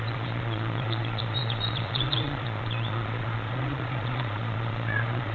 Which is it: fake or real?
fake